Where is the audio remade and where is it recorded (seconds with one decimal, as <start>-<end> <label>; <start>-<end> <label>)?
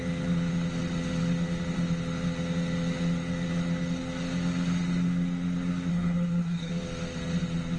0.0-5.9 recorded; 5.9-6.7 remade; 6.7-7.8 recorded